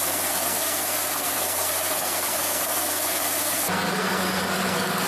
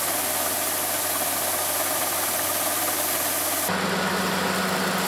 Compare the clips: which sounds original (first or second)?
second